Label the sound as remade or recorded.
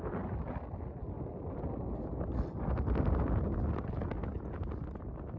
recorded